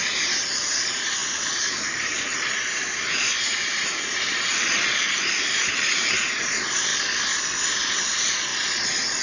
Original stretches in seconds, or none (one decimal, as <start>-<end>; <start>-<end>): 1.2-1.7; 6.9-8.0; 8.5-9.2